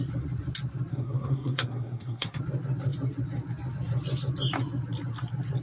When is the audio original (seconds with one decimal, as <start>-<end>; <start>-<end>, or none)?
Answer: 0.0-0.9; 2.4-5.6